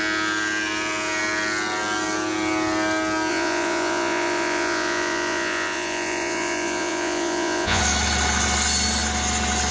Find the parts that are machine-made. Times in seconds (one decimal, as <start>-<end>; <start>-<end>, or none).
3.3-7.8